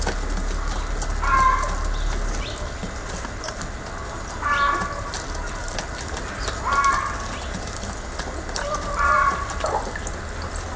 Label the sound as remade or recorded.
recorded